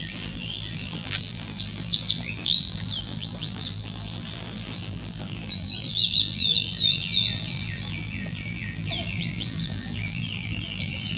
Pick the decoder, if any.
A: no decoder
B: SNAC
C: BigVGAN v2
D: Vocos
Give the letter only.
C